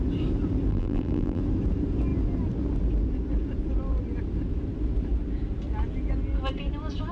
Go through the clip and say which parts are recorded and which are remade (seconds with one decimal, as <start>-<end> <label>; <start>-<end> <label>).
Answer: 0.0-0.7 recorded; 0.7-1.4 remade; 1.4-7.1 recorded